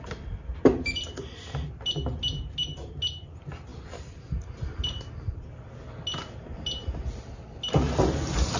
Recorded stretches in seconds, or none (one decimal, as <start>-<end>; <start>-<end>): 0.0-8.6